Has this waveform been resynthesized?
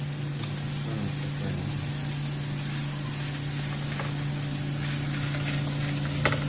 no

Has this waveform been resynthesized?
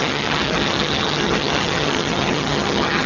yes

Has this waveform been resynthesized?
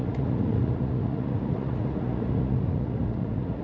yes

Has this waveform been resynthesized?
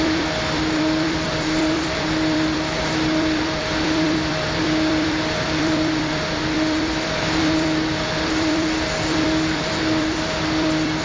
yes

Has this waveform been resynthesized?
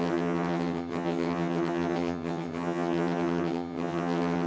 yes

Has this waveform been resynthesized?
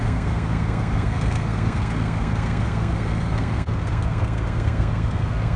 yes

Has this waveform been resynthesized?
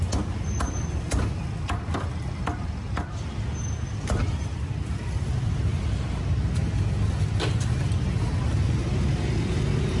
no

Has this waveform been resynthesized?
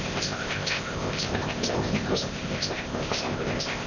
yes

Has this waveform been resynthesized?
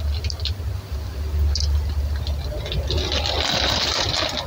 no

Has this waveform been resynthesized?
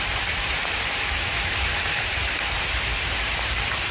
yes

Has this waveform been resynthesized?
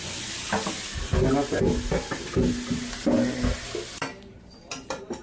no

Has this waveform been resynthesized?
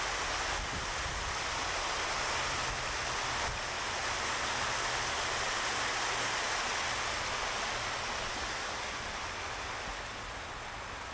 no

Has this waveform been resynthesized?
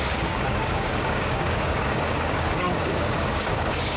yes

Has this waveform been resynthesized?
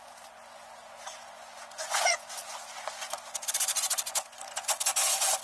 yes